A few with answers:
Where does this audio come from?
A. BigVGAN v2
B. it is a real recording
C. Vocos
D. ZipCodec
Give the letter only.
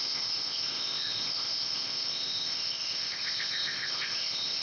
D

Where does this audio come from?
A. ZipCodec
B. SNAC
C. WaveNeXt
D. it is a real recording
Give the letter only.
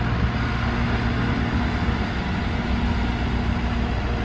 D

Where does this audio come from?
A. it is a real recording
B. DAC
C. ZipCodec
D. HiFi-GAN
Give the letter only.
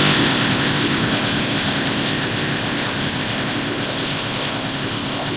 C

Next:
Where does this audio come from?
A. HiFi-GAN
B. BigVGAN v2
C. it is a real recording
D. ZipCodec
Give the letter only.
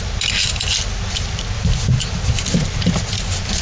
C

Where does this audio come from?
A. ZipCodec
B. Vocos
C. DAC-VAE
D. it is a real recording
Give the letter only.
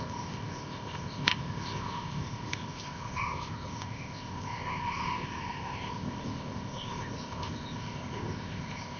A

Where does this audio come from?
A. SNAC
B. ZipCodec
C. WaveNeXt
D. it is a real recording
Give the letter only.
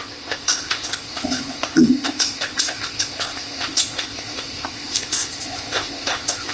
B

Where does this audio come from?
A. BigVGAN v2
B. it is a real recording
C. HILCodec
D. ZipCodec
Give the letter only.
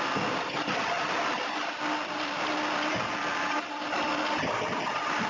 B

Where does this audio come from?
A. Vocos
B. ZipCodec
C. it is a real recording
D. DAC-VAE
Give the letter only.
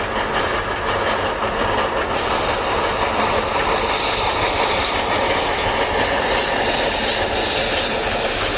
C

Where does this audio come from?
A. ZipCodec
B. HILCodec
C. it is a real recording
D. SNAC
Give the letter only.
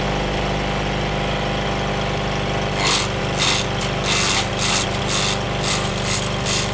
C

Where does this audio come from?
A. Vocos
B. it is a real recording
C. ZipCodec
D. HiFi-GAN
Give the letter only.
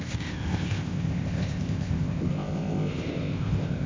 C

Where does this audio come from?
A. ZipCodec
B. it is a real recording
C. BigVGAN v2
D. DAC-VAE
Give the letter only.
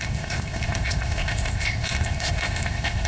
A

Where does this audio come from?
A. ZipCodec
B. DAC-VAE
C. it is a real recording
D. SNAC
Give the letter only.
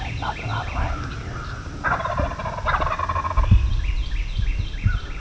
C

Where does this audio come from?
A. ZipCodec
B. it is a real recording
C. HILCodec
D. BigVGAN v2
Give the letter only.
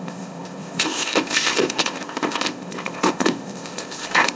A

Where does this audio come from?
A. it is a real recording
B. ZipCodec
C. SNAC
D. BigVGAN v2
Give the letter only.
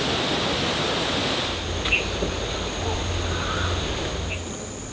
A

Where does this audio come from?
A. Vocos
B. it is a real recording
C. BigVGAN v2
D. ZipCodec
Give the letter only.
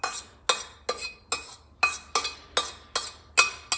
B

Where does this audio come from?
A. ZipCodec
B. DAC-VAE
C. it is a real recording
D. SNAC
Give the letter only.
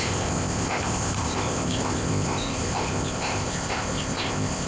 A